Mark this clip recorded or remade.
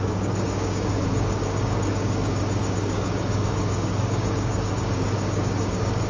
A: remade